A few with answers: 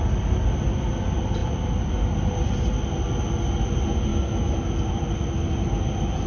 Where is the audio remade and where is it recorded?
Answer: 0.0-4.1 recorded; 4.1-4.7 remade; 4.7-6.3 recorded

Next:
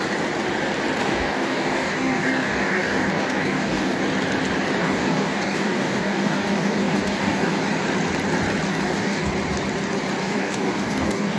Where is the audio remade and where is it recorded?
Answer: 0.0-1.0 recorded; 1.0-4.0 remade; 4.0-4.8 recorded; 4.8-7.6 remade; 7.6-8.7 recorded; 8.7-9.3 remade; 9.3-10.2 recorded; 10.2-11.4 remade

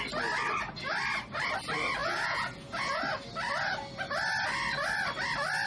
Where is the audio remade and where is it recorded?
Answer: 0.0-2.0 recorded; 2.0-3.0 remade; 3.0-5.7 recorded

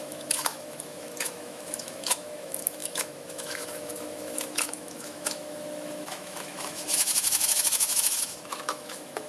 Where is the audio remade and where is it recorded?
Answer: 0.0-9.3 remade

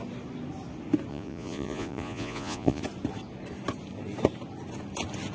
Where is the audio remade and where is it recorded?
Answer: 0.0-1.1 recorded; 1.1-2.8 remade; 2.8-5.3 recorded

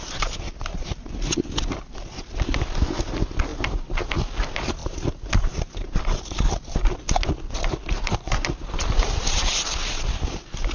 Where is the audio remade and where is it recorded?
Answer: 0.0-3.5 recorded; 3.5-4.1 remade; 4.1-4.8 recorded; 4.8-6.2 remade; 6.2-10.7 recorded

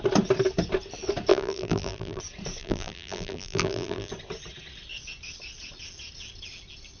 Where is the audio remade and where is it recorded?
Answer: 0.0-1.3 recorded; 1.3-2.2 remade; 2.2-2.6 recorded; 2.6-4.1 remade; 4.1-7.0 recorded

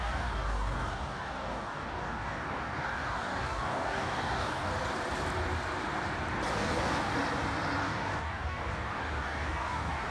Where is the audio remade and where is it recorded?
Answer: 0.0-4.7 remade; 4.7-6.5 recorded; 6.5-7.2 remade; 7.2-7.8 recorded; 7.8-10.1 remade